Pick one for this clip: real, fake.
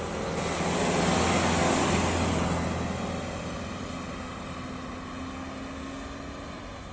real